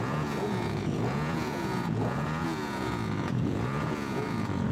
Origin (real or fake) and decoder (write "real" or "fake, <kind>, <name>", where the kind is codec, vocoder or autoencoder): fake, vocoder, Vocos